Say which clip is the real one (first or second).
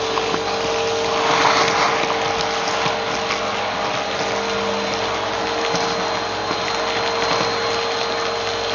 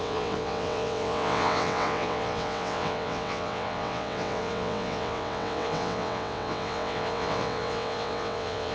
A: first